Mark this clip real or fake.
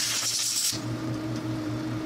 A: fake